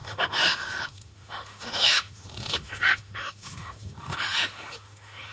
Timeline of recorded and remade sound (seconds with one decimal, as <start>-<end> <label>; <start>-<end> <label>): 0.0-5.3 remade